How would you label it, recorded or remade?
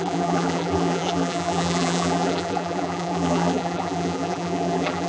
remade